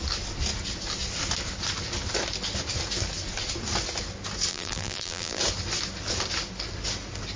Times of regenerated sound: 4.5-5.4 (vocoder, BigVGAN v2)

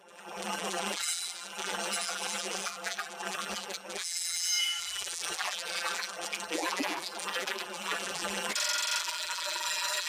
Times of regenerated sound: 0.0-8.5 (vocoder, BigVGAN v2); 9.0-10.1

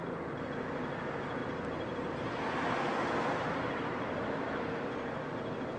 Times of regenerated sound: 1.4-2.7 (vocoder, BigVGAN v2)

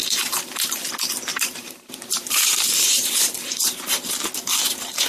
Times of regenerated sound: 0.0-0.9 (vocoder, BigVGAN v2); 1.3-4.1

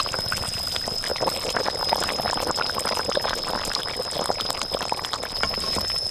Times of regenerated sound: 1.1-3.8 (vocoder, BigVGAN v2)

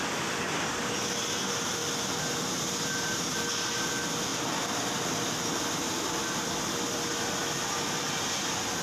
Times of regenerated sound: none